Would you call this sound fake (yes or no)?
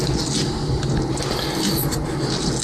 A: no